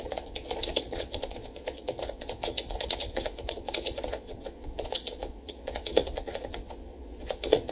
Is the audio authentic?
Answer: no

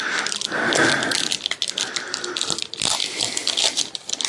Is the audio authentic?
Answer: yes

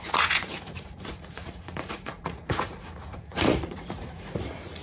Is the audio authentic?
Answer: no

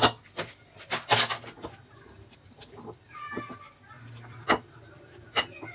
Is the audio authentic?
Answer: yes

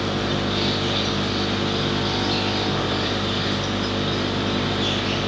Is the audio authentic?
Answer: yes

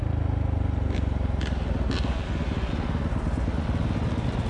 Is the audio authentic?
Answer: yes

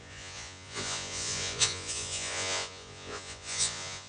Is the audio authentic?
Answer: no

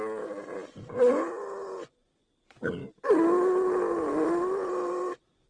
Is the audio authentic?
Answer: yes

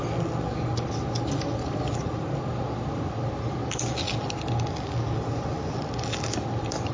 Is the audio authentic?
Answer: yes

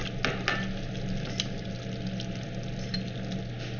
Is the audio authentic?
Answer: yes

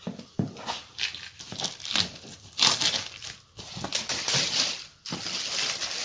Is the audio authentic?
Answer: yes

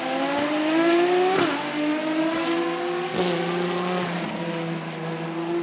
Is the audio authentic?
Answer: yes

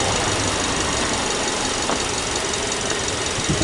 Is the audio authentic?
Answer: yes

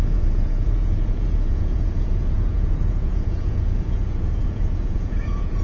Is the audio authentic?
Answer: no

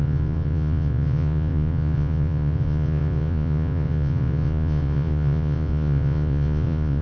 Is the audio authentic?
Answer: no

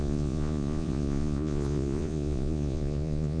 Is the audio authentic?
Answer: no